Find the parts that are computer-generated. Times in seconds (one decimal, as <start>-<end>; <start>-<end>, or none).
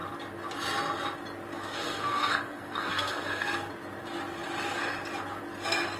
1.5-3.7